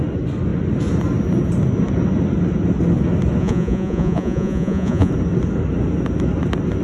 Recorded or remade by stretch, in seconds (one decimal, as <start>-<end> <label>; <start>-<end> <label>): 0.0-3.4 recorded; 3.4-5.1 remade; 5.1-6.8 recorded